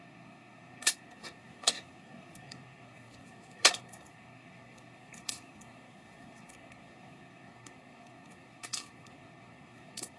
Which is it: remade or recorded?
remade